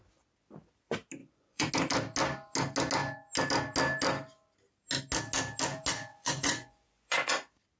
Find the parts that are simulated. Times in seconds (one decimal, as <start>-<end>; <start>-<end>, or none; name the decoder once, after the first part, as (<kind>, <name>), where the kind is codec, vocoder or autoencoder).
1.2-1.7 (vocoder, Vocos); 6.1-7.3